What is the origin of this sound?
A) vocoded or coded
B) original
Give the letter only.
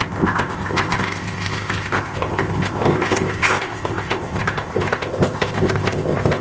A